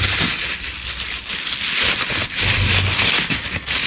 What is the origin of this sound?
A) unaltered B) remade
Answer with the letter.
A